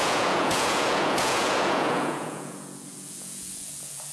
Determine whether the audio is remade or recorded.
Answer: remade